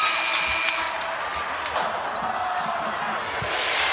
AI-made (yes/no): no